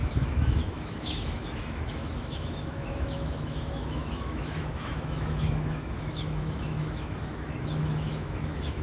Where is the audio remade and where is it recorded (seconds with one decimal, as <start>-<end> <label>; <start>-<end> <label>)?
0.0-8.8 remade